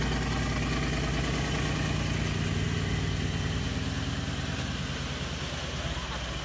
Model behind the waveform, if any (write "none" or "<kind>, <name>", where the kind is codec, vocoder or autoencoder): none